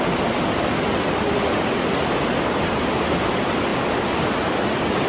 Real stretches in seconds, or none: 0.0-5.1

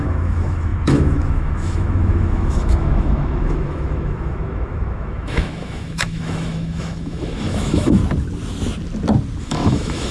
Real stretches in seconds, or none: 8.0-9.4

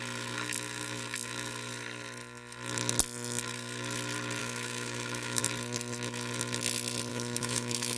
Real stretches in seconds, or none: 0.0-4.4; 5.4-7.1